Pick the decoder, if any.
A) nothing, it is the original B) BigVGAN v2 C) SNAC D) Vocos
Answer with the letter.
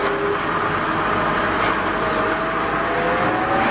A